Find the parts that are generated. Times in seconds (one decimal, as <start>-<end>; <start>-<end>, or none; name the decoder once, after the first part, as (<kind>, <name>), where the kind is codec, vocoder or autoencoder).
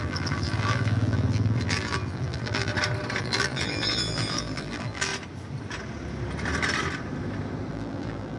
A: 0.0-2.7 (vocoder, BigVGAN v2); 3.2-5.1; 7.7-8.4